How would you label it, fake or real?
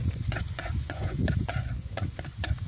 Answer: fake